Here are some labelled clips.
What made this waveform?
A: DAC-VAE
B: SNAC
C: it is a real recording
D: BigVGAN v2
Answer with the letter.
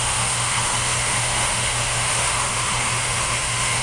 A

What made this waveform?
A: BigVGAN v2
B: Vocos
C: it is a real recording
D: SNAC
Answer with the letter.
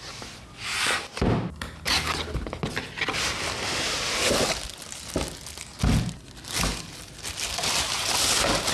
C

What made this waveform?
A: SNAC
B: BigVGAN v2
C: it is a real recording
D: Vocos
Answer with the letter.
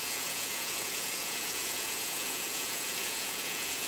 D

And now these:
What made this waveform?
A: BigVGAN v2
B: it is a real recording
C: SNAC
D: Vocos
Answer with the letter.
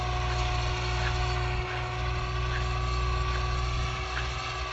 B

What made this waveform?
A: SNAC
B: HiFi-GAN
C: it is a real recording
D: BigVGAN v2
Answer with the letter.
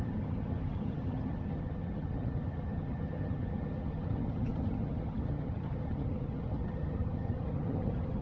B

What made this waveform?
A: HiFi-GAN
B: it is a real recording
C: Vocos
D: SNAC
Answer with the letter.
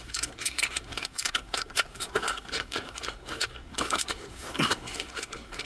D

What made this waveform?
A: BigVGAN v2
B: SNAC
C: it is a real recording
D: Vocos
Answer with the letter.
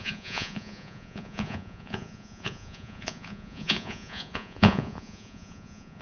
D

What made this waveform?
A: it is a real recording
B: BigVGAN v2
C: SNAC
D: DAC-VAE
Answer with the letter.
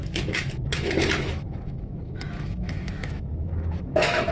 D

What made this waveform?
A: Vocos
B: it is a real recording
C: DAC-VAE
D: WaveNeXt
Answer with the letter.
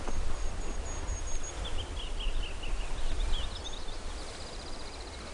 B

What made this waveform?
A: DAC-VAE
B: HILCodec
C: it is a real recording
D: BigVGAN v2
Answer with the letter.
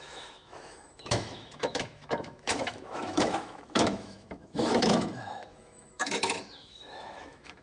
A